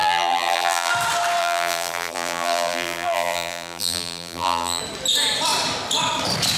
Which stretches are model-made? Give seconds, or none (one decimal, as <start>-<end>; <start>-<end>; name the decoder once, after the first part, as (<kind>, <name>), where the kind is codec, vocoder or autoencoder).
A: 0.0-0.9 (vocoder, BigVGAN v2); 1.4-4.8